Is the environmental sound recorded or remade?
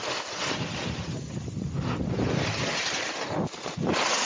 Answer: recorded